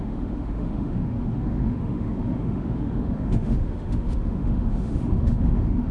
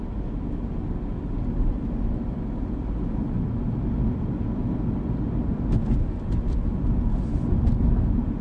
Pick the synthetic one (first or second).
first